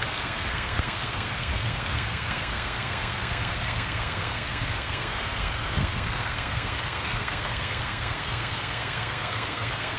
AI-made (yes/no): yes